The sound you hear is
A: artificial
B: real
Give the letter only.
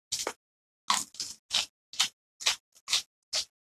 B